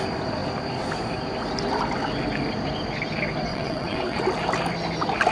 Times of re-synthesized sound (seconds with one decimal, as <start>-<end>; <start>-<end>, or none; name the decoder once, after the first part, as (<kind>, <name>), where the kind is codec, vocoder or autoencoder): 3.5-4.2 (vocoder, WaveNeXt)